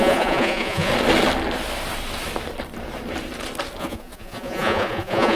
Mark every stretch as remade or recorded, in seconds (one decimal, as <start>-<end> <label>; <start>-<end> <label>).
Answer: 0.0-0.9 remade; 0.9-3.8 recorded; 3.8-5.4 remade

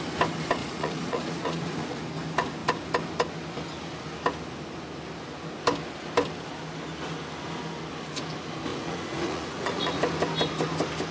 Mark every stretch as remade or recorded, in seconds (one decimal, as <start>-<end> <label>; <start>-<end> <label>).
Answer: 0.0-0.6 recorded; 0.6-2.0 remade; 2.0-8.7 recorded; 8.7-10.0 remade; 10.0-11.1 recorded

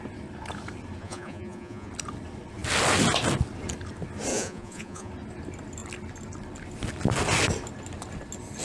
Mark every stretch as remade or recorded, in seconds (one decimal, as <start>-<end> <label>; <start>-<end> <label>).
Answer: 0.0-1.0 recorded; 1.0-1.9 remade; 1.9-4.3 recorded; 4.3-5.1 remade; 5.1-8.6 recorded

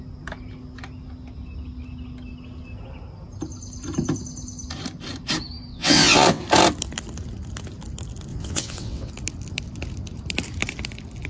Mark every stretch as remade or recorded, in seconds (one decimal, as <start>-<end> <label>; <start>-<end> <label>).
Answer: 0.0-5.7 recorded; 5.7-6.4 remade; 6.4-8.3 recorded; 8.3-9.1 remade; 9.1-11.3 recorded

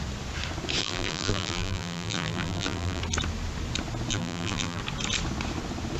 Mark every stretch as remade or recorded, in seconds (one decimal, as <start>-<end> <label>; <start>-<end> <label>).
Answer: 0.0-0.8 recorded; 0.8-3.0 remade; 3.0-4.1 recorded; 4.1-4.8 remade; 4.8-6.0 recorded

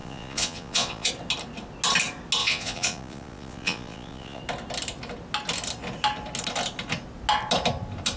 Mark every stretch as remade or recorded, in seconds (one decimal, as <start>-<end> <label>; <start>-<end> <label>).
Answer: 0.0-1.1 remade; 1.1-2.4 recorded; 2.4-4.4 remade; 4.4-8.2 recorded